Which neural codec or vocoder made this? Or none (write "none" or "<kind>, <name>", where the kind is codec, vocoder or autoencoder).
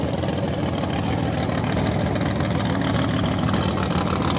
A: none